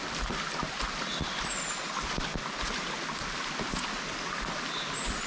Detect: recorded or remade recorded